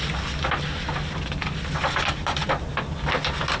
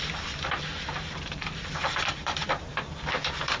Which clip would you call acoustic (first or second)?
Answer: first